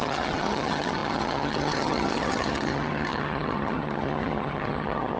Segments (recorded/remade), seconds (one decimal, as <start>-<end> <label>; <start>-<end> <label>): 0.0-5.2 remade